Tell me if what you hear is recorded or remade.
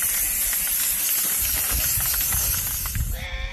recorded